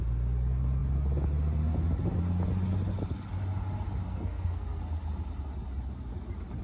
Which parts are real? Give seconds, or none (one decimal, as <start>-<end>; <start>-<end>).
0.0-4.0; 4.8-6.6